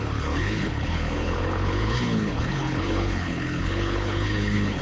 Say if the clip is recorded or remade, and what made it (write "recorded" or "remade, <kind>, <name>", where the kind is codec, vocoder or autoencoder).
remade, codec, HILCodec